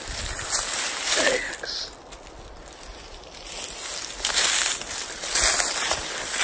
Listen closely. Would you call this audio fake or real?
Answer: real